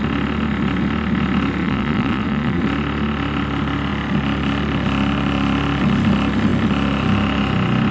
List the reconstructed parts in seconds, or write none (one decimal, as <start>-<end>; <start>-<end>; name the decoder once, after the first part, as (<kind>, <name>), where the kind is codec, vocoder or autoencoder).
1.6-2.6 (vocoder, Vocos)